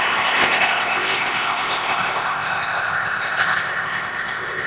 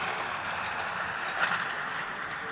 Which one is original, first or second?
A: second